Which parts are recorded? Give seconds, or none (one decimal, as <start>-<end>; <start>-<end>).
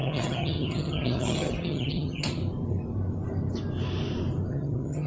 2.4-4.5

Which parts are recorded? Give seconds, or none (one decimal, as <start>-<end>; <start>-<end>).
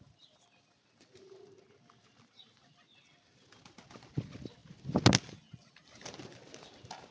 0.0-7.1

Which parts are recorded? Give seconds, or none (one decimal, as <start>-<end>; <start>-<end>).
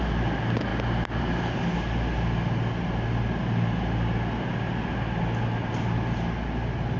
0.0-7.0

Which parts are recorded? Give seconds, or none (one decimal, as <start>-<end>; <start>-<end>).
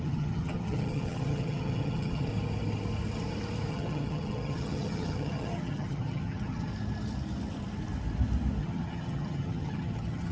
2.3-3.7; 6.7-8.6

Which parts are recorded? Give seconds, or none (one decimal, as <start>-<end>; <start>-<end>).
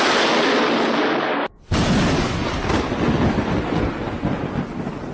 0.0-5.1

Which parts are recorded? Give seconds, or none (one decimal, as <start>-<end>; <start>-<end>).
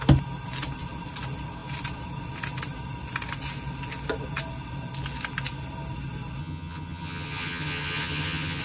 0.0-6.4